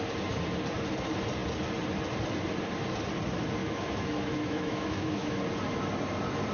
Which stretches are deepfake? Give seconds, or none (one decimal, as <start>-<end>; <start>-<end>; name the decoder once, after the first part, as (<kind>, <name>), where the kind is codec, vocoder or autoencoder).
3.6-5.4 (autoencoder, DAC-VAE)